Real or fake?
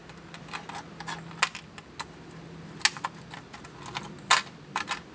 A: real